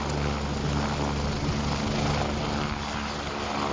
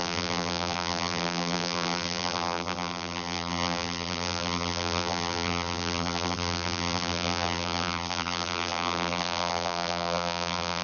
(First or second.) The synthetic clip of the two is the second